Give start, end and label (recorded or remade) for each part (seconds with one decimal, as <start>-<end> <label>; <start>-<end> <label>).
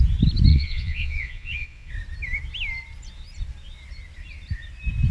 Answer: 0.0-0.5 recorded; 0.5-1.9 remade; 1.9-5.1 recorded